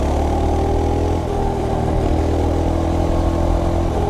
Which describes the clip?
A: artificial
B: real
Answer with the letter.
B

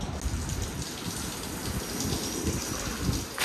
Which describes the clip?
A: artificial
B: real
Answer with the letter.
B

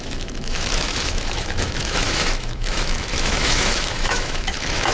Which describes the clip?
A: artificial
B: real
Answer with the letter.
A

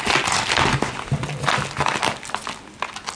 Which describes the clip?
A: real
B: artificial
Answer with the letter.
A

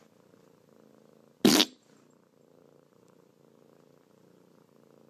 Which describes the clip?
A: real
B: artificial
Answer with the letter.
A